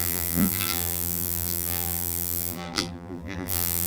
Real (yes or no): no